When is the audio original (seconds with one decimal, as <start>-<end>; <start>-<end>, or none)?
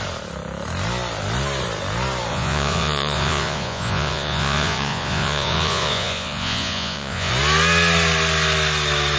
0.0-2.3; 7.3-9.2